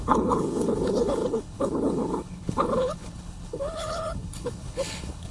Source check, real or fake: fake